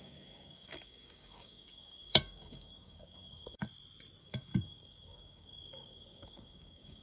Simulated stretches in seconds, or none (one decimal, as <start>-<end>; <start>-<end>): 0.0-3.6; 4.2-7.0